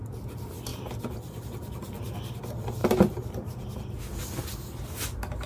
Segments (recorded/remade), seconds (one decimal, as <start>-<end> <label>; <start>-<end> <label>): 0.0-5.5 recorded